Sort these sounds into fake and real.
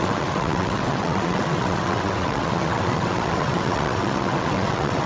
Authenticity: fake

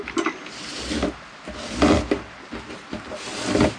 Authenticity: real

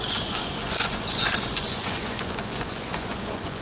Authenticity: fake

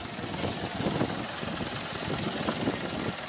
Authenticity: real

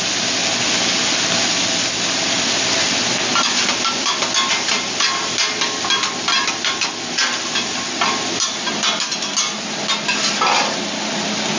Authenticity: real